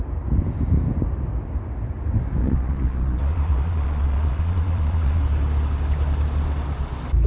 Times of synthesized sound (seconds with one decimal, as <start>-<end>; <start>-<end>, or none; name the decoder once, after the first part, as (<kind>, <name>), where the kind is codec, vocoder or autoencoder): 2.4-5.2 (vocoder, Vocos)

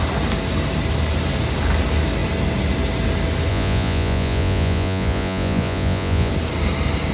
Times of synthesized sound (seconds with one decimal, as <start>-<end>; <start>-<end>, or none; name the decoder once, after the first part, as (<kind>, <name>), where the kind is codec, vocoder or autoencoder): 3.5-6.3 (vocoder, Vocos)

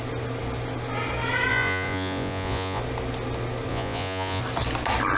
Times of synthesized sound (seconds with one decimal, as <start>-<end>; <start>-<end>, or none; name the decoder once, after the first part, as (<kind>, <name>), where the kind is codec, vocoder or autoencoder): 1.5-2.8 (vocoder, Vocos); 3.7-4.4

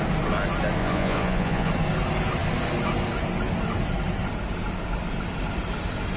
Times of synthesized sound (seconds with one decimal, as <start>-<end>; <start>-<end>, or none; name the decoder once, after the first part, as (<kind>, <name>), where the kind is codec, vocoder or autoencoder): 0.8-1.7 (vocoder, Vocos)

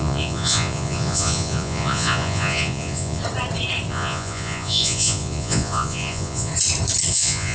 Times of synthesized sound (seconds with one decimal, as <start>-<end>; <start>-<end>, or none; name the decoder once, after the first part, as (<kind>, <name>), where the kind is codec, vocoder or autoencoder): 0.0-3.2 (vocoder, Vocos); 3.9-6.5; 7.1-7.5

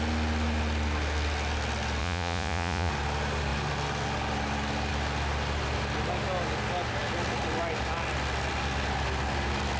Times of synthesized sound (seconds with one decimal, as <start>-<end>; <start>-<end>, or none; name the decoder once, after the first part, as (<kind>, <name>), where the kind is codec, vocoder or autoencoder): 2.0-2.9 (vocoder, Vocos)